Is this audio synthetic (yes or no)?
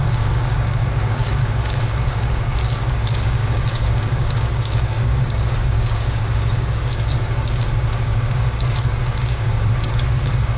yes